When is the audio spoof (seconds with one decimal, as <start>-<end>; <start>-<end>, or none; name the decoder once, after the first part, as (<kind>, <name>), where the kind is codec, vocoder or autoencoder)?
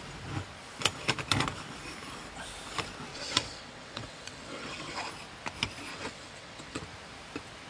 3.1-5.1 (vocoder, WaveNeXt); 5.9-6.8